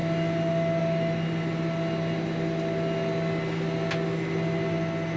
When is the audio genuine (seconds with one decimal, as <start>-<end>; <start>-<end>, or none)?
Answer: 0.0-5.2